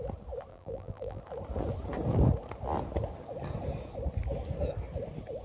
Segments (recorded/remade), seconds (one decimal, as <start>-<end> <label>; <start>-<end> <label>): 0.0-0.5 recorded; 0.5-1.2 remade; 1.2-5.4 recorded